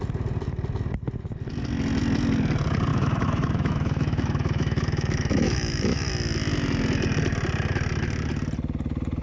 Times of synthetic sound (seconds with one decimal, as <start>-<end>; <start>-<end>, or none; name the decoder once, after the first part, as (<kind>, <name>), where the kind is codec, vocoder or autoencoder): 2.9-6.1 (autoencoder, DAC-VAE)